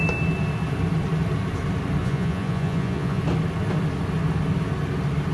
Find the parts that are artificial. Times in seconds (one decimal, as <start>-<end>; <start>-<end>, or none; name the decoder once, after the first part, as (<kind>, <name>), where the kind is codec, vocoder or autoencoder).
2.0-3.2 (vocoder, Vocos)